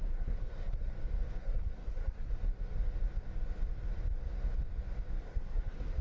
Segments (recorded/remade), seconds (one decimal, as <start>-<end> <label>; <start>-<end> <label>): 0.0-0.9 remade; 0.9-1.4 recorded; 1.4-2.3 remade; 2.3-5.2 recorded; 5.2-6.0 remade

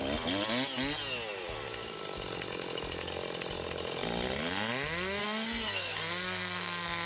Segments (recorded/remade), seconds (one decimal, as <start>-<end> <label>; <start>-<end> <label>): 0.0-5.2 recorded; 5.2-7.1 remade

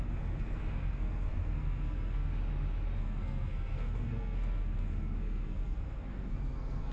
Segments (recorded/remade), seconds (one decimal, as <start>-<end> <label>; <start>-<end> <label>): 0.0-2.3 remade; 2.3-3.0 recorded; 3.0-6.9 remade

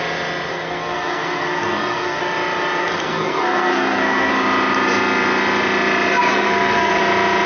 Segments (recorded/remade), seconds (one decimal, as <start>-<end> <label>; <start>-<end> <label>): 0.0-0.5 recorded; 0.5-2.2 remade; 2.2-2.8 recorded; 2.8-4.3 remade; 4.3-6.3 recorded; 6.3-7.0 remade; 7.0-7.5 recorded